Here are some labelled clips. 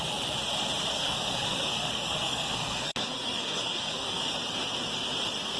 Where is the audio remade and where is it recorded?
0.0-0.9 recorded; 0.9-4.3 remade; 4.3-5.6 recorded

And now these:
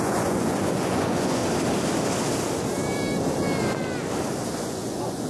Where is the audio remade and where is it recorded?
0.0-1.4 remade; 1.4-4.6 recorded; 4.6-5.3 remade